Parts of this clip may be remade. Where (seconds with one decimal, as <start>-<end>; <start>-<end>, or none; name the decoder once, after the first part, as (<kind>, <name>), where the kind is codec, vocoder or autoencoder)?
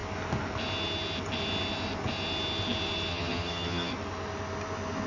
3.1-3.9 (vocoder, HiFi-GAN)